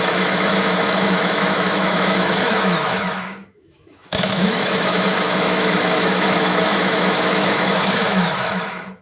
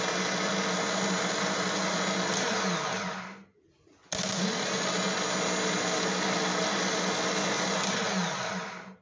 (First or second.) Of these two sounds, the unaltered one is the second